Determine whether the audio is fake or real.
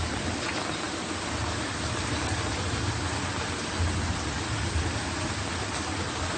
real